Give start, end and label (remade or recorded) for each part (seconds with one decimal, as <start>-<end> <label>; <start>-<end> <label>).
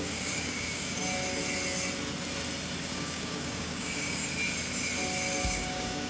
0.0-1.0 remade; 1.0-2.8 recorded; 2.8-4.2 remade; 4.2-5.4 recorded; 5.4-6.1 remade